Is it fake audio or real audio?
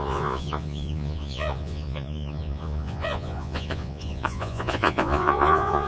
fake